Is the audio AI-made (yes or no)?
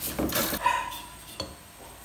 no